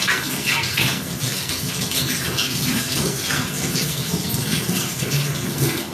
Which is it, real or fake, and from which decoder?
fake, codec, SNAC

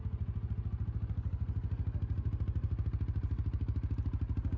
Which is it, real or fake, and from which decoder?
real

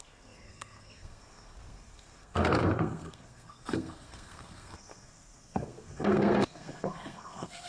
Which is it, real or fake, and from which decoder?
fake, codec, SNAC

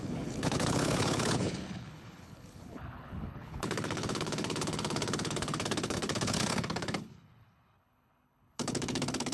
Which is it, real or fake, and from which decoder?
fake, codec, HILCodec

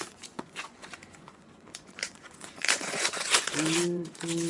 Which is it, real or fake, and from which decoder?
fake, vocoder, Vocos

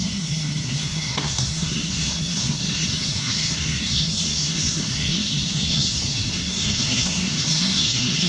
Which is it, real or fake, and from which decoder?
fake, codec, SNAC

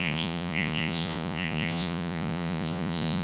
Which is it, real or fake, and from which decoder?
fake, vocoder, Vocos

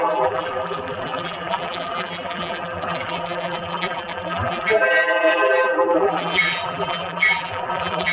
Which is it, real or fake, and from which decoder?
fake, vocoder, BigVGAN v2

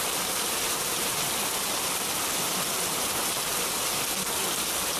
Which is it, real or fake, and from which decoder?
fake, vocoder, BigVGAN v2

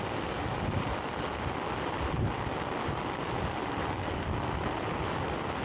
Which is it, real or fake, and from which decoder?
real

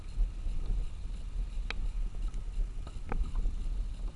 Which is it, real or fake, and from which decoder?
real